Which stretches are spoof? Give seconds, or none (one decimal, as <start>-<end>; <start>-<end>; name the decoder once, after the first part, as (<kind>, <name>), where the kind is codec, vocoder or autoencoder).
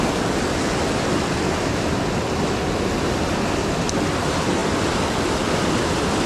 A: none